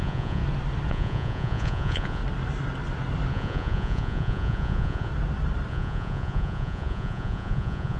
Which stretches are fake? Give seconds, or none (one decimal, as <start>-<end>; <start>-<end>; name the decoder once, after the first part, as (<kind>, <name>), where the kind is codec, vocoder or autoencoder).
0.0-0.4 (vocoder, Vocos); 0.9-2.2; 3.3-5.1; 5.7-8.0